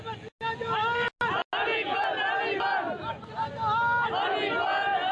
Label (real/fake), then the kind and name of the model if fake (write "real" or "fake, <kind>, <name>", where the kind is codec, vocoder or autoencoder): real